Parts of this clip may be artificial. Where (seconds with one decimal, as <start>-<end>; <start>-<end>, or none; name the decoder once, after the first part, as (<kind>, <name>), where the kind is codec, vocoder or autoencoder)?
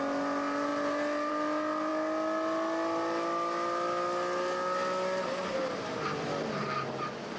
none